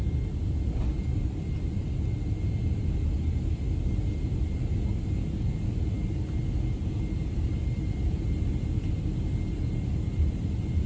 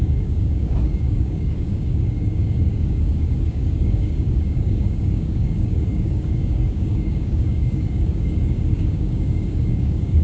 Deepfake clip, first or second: second